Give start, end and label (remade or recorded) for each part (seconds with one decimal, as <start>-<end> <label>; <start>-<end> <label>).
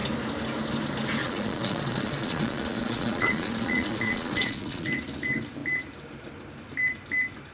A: 0.0-1.2 recorded; 1.2-4.9 remade; 4.9-7.5 recorded